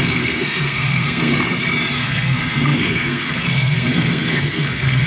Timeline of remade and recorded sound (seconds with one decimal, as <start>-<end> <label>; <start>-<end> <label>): 0.0-1.3 remade; 1.3-1.9 recorded; 1.9-5.1 remade